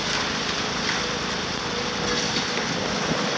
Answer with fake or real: real